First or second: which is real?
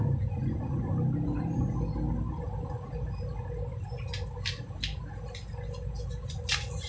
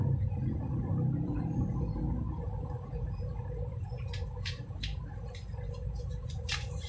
first